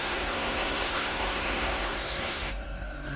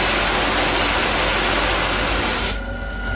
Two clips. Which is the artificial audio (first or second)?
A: first